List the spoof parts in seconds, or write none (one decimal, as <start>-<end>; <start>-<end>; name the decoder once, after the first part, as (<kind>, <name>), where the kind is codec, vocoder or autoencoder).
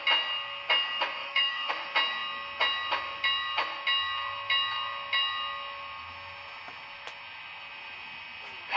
1.2-1.7 (autoencoder, DAC-VAE)